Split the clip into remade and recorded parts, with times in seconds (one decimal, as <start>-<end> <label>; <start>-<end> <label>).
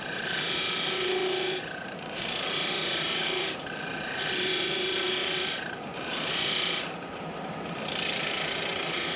0.0-9.2 remade